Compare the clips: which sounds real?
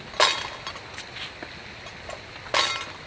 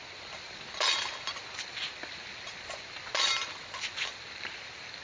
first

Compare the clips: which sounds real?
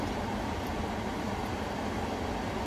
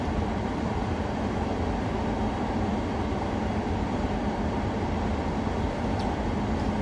first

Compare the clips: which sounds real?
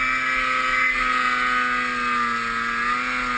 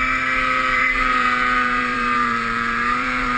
first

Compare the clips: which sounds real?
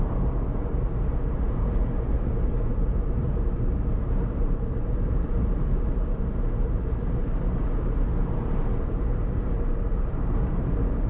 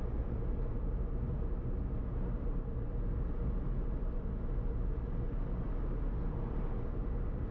second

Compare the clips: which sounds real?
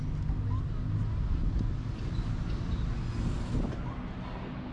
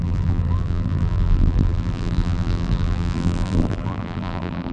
first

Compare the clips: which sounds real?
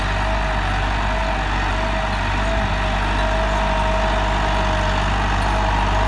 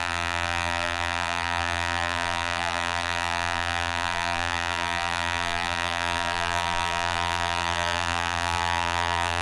first